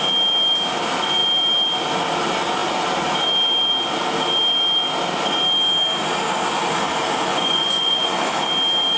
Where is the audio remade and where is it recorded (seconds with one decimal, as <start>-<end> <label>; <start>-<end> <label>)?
0.0-7.3 recorded; 7.3-8.3 remade; 8.3-9.0 recorded